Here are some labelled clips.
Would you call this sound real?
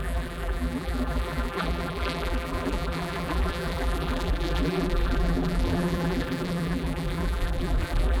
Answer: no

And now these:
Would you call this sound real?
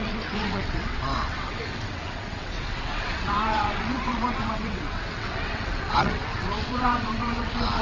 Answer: no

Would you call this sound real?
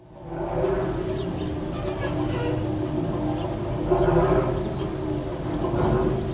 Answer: yes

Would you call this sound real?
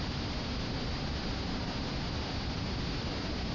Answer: yes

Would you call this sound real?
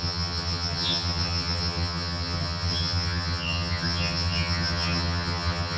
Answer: no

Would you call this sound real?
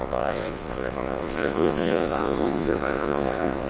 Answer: no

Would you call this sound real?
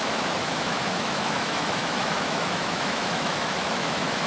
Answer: no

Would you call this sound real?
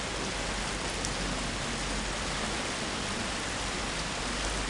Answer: yes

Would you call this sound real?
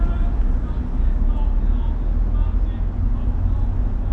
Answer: yes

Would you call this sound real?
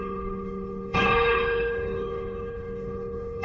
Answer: no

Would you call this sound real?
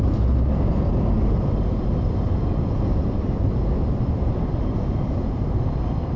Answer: yes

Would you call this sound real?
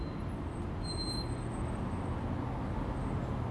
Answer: yes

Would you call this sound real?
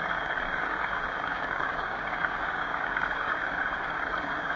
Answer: no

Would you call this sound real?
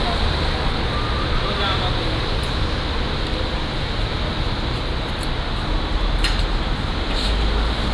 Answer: yes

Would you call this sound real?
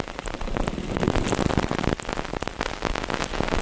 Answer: yes